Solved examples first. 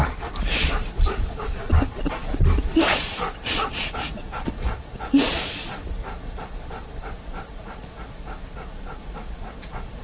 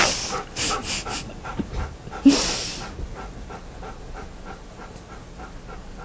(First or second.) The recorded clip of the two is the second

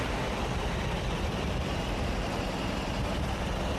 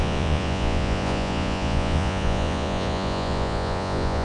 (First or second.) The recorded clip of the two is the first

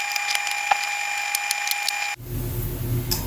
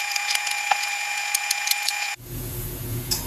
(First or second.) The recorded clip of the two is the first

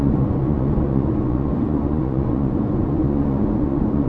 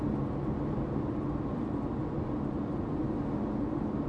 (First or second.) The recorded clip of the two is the second